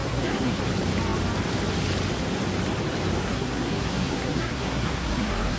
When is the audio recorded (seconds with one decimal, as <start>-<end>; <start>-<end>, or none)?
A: 0.6-3.2

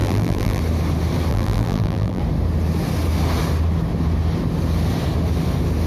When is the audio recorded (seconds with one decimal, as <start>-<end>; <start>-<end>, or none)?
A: 0.6-1.3; 2.2-5.9

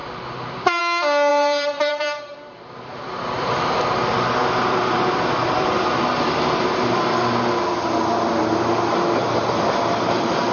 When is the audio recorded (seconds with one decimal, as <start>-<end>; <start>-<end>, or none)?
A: 0.8-1.3; 3.7-4.4; 7.5-10.5

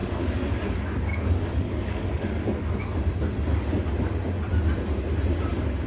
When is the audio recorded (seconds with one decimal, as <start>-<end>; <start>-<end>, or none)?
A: 0.6-1.1; 2.8-5.9